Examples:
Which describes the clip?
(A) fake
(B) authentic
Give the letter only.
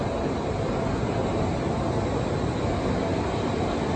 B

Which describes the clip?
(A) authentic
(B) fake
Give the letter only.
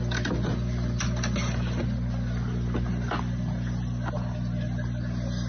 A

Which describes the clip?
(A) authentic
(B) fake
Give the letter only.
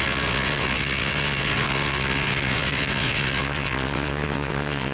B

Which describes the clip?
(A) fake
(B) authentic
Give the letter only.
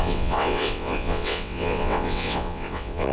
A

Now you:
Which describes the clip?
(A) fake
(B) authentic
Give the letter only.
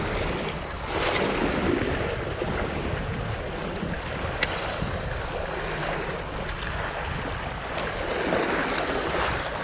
B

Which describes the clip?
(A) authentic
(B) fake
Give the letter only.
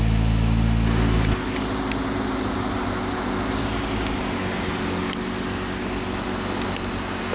A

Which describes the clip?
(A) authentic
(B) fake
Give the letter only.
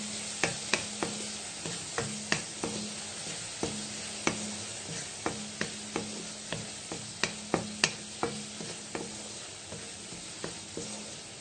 A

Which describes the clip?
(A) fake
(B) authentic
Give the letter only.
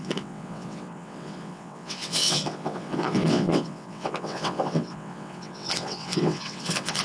A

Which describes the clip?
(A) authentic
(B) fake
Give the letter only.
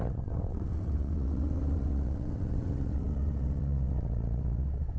B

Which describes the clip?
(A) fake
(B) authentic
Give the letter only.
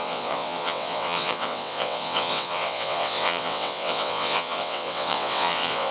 A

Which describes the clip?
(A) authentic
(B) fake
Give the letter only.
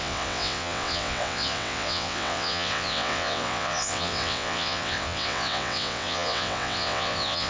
B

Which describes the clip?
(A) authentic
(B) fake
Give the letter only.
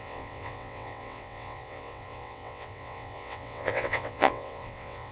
B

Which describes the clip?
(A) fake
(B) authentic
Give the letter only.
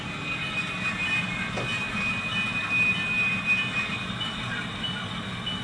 B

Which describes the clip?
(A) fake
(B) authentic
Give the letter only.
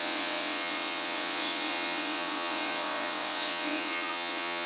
A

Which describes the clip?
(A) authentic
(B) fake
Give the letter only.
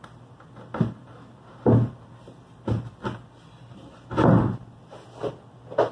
A